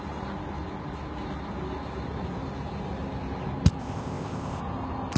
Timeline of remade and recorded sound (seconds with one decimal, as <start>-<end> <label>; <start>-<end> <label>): 0.0-3.8 recorded; 3.8-4.6 remade; 4.6-5.2 recorded